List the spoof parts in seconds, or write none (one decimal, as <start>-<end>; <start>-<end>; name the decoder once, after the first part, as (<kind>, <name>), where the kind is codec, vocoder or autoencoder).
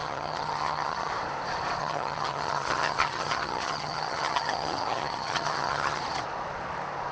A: 0.0-1.1 (vocoder, HiFi-GAN); 1.8-6.0